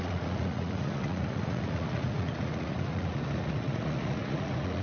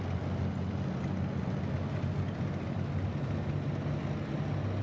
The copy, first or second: first